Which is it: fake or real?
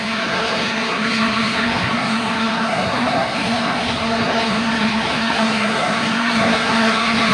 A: fake